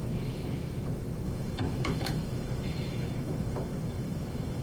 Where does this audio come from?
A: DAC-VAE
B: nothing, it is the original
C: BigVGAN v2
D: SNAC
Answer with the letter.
A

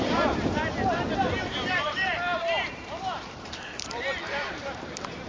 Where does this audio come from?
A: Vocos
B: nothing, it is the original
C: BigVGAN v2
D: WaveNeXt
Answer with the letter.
C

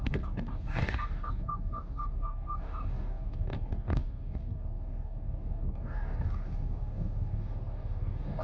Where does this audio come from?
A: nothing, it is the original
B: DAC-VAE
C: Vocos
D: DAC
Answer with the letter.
D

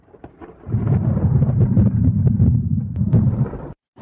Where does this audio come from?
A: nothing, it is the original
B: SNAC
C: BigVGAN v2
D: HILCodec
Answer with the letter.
C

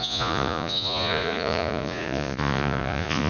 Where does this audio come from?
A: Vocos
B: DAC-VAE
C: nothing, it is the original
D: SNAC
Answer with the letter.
A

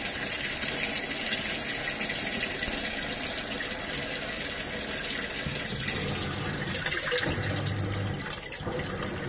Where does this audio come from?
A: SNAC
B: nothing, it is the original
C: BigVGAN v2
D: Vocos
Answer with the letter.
B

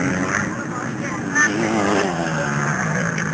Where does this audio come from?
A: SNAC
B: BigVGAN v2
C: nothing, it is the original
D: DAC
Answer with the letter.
C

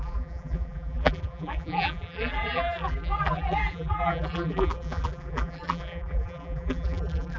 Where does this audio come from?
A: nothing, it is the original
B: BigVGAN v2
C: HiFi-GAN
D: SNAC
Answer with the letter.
B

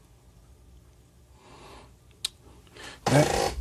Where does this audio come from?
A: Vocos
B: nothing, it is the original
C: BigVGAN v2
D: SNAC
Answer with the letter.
B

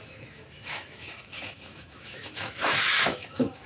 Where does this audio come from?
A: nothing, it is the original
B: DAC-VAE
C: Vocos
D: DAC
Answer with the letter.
B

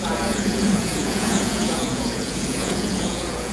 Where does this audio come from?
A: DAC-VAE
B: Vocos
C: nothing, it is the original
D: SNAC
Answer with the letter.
B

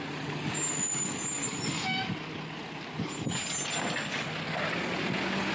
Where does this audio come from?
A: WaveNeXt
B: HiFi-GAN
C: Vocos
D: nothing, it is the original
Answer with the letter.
D